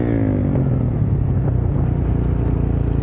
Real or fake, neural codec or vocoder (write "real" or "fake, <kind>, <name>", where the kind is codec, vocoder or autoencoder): real